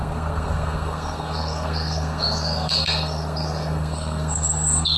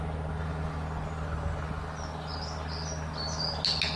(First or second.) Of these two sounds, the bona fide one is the second